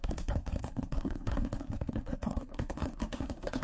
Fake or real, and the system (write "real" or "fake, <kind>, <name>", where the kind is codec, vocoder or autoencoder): fake, codec, SNAC